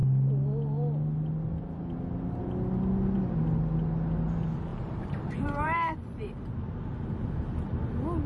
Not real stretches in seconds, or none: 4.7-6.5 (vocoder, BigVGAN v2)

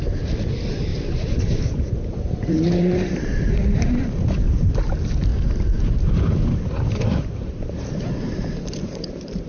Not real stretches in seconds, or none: 0.9-4.0 (vocoder, BigVGAN v2); 5.3-9.5

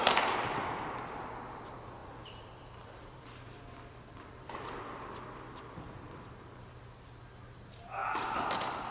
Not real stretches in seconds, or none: 2.0-6.7 (vocoder, BigVGAN v2); 8.0-8.9

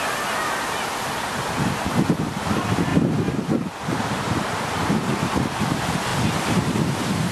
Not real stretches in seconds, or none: 2.9-3.9 (vocoder, BigVGAN v2)